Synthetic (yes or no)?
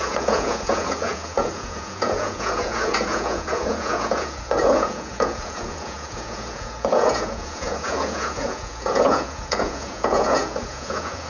yes